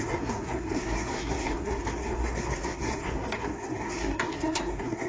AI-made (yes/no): yes